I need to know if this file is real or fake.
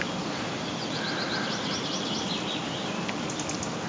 real